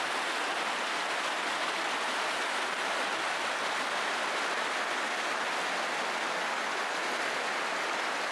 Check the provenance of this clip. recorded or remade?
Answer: recorded